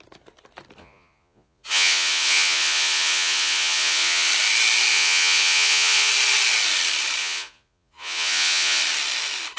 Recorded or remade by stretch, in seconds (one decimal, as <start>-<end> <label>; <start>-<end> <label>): 0.0-0.8 recorded; 0.8-4.3 remade; 4.3-4.9 recorded; 4.9-6.1 remade; 6.1-7.2 recorded; 7.2-8.8 remade; 8.8-9.6 recorded